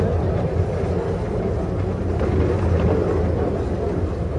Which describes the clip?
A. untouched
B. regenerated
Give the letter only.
A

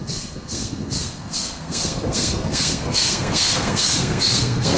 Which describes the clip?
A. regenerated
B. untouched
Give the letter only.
A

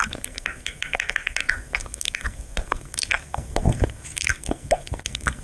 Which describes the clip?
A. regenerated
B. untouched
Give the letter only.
A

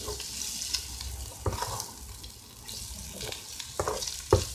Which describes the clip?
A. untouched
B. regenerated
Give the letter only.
A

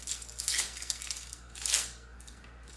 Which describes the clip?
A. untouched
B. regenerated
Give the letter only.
B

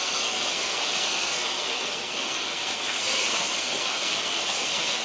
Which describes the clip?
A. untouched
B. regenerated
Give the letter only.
B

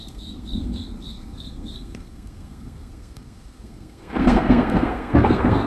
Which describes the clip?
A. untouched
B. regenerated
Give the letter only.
B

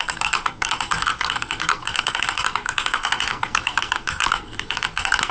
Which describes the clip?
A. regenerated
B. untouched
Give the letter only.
A